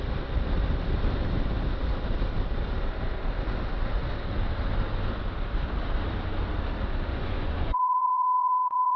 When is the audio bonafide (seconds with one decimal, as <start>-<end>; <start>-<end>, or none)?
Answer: 0.0-7.1